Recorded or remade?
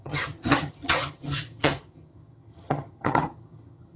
remade